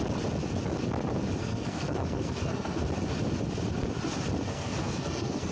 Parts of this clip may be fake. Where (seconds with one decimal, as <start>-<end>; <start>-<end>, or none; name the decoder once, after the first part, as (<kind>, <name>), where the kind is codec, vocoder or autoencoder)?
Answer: 1.4-2.8 (codec, SNAC); 4.5-5.5